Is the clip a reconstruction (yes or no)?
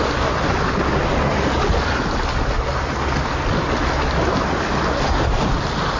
no